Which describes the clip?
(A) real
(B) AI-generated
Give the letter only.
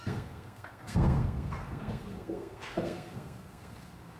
B